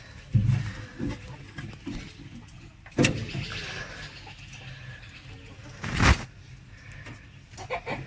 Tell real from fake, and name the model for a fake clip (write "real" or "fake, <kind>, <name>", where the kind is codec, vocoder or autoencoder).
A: real